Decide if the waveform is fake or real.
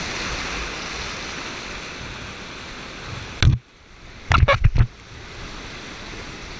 real